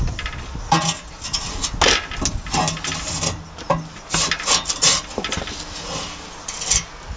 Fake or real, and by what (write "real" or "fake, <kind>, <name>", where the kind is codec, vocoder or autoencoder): real